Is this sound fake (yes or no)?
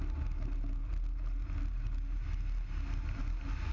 no